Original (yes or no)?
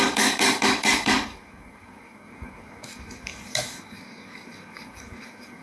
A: no